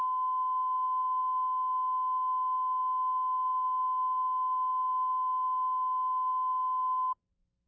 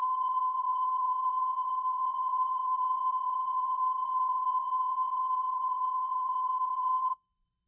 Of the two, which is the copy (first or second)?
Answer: second